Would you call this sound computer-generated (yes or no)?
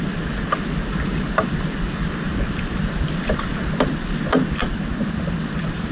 no